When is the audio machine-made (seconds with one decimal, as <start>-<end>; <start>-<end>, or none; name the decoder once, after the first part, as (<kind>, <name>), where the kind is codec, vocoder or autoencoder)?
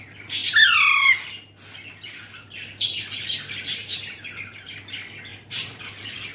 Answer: 3.8-4.7 (vocoder, BigVGAN v2); 5.3-5.8